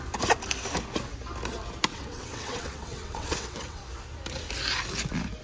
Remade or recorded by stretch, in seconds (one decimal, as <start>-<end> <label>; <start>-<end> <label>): 0.0-1.9 recorded; 1.9-3.8 remade; 3.8-5.4 recorded